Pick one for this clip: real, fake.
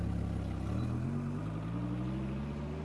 real